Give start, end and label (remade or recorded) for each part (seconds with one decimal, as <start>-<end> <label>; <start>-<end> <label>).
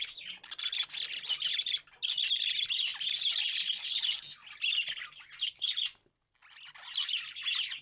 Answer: 0.0-7.8 recorded